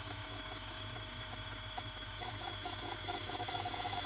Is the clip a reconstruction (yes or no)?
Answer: yes